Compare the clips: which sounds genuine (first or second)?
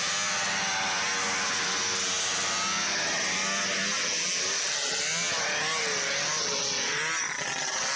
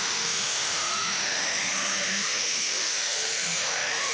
first